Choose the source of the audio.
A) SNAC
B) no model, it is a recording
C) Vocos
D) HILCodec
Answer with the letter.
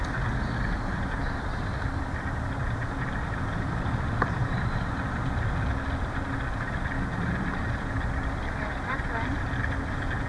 B